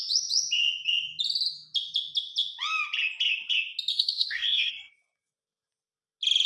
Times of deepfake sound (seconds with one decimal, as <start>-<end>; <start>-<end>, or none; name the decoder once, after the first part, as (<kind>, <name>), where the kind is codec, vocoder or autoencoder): 3.9-4.7 (codec, SNAC)